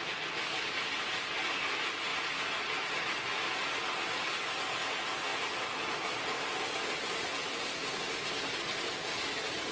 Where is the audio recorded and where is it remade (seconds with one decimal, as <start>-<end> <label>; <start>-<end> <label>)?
0.0-9.7 recorded